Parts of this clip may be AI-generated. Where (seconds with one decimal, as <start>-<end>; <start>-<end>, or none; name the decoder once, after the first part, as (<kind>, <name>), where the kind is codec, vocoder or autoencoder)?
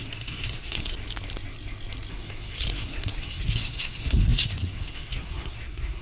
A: 0.0-1.0 (codec, SNAC); 2.1-6.0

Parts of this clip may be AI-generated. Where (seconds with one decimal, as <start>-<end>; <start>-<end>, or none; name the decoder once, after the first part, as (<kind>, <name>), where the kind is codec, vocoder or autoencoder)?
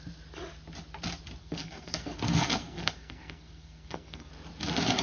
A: 1.4-4.3 (codec, SNAC)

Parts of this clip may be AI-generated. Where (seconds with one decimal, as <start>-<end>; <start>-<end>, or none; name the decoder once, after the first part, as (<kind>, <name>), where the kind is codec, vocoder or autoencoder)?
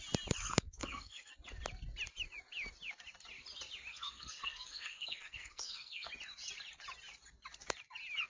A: 0.5-1.3 (codec, SNAC); 3.9-6.1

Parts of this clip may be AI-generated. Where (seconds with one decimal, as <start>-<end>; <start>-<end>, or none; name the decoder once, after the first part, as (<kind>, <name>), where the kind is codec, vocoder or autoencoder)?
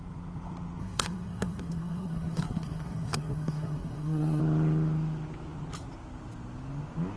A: 0.8-4.4 (codec, SNAC)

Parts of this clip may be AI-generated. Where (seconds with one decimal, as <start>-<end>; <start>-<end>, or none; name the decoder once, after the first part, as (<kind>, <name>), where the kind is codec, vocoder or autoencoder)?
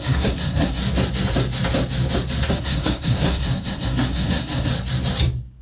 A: 0.0-0.8 (codec, SNAC); 2.5-4.7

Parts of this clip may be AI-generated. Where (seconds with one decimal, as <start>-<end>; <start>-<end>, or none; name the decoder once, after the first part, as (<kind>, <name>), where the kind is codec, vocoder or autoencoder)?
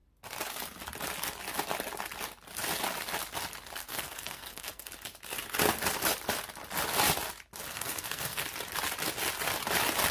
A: 3.8-4.9 (codec, SNAC); 7.7-8.5